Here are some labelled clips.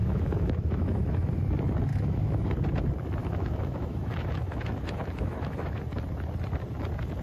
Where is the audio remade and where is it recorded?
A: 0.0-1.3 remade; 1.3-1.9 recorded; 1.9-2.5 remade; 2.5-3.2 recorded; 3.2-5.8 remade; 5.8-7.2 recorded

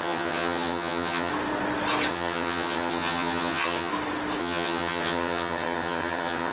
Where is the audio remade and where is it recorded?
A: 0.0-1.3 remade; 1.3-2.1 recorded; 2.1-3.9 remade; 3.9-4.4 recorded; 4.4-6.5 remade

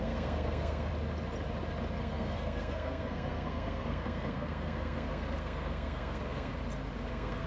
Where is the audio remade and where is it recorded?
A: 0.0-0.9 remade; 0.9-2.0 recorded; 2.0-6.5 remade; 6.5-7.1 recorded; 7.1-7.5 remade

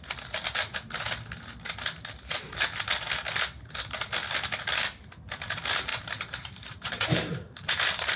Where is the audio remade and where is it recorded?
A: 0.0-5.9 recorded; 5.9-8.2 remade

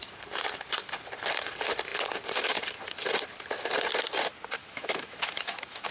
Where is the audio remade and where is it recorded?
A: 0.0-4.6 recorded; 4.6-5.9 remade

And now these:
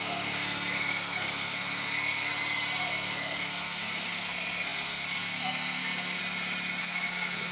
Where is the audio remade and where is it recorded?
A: 0.0-2.3 remade; 2.3-2.8 recorded; 2.8-6.2 remade; 6.2-6.8 recorded; 6.8-7.5 remade

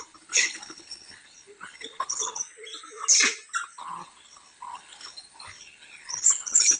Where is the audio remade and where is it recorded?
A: 0.0-2.4 remade; 2.4-3.8 recorded; 3.8-6.8 remade